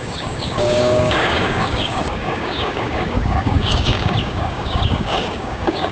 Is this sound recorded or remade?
remade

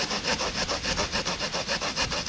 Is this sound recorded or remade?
recorded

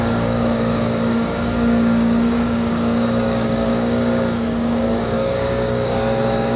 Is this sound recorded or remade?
remade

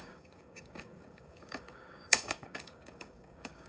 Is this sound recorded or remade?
remade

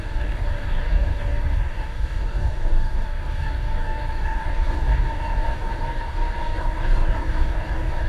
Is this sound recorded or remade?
remade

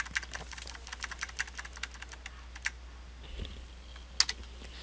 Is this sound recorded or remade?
recorded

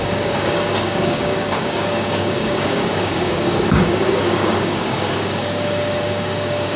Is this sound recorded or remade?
remade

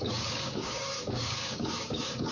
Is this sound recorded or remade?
remade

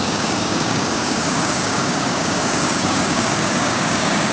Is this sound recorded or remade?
remade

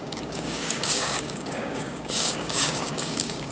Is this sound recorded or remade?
remade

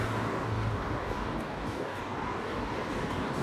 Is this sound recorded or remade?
remade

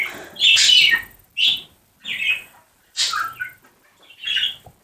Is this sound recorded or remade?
recorded